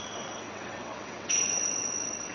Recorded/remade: remade